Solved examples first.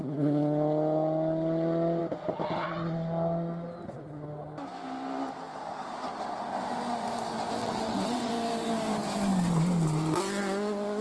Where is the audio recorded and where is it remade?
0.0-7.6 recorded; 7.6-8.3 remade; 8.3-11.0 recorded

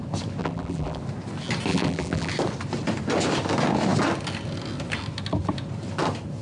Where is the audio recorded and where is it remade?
0.0-0.4 recorded; 0.4-1.0 remade; 1.0-1.7 recorded; 1.7-2.3 remade; 2.3-6.4 recorded

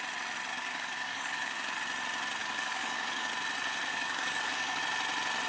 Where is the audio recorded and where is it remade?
0.0-0.5 recorded; 0.5-1.8 remade; 1.8-2.4 recorded; 2.4-3.3 remade; 3.3-3.9 recorded; 3.9-4.8 remade; 4.8-5.5 recorded

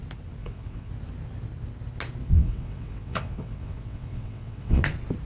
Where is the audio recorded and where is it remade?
0.0-0.4 recorded; 0.4-0.9 remade; 0.9-2.2 recorded; 2.2-4.8 remade; 4.8-5.3 recorded

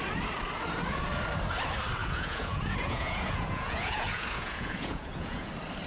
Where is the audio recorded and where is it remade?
0.0-2.0 recorded; 2.0-5.5 remade; 5.5-5.9 recorded

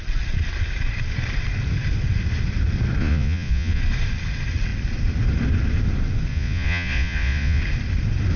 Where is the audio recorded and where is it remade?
0.0-3.0 recorded; 3.0-3.8 remade; 3.8-6.3 recorded; 6.3-7.6 remade; 7.6-8.4 recorded